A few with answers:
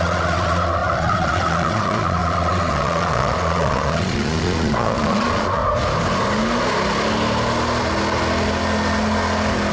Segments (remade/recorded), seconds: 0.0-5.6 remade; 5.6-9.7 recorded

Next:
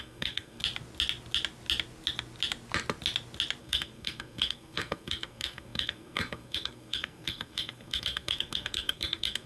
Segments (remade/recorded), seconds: 0.0-0.6 remade; 0.6-3.6 recorded; 3.6-9.5 remade

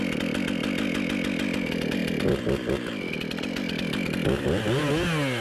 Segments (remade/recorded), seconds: 0.0-5.4 recorded

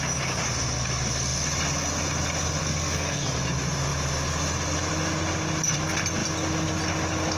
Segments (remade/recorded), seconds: 0.0-2.6 recorded; 2.6-3.3 remade; 3.3-7.4 recorded